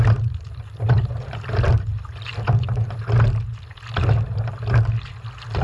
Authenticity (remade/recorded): recorded